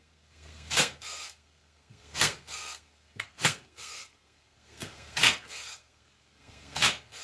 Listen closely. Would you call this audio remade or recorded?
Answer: remade